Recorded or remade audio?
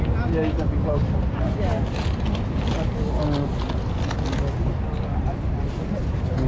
recorded